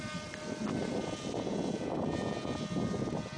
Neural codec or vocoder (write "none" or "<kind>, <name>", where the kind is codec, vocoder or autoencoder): vocoder, BigVGAN v2